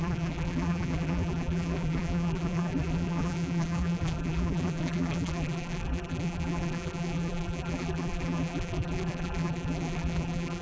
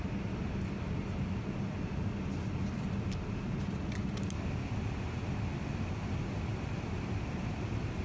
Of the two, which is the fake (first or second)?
first